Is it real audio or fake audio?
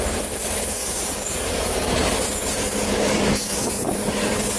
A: fake